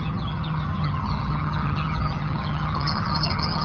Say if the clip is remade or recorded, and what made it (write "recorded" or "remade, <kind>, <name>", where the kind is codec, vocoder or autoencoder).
remade, vocoder, HiFi-GAN